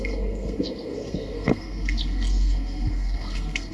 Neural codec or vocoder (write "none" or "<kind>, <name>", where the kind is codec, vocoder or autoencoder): codec, SNAC